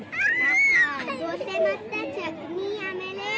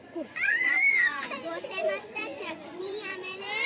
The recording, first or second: first